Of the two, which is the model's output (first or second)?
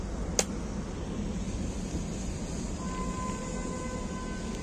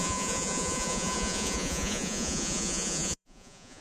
second